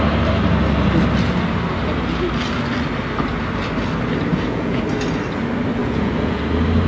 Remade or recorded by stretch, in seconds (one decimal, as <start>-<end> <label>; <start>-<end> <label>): 0.0-4.3 recorded; 4.3-4.8 remade; 4.8-5.8 recorded; 5.8-6.4 remade; 6.4-6.9 recorded